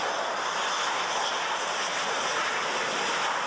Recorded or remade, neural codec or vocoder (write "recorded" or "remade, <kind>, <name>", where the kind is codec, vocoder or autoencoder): recorded